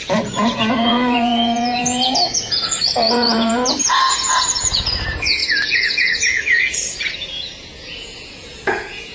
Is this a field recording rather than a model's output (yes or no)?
no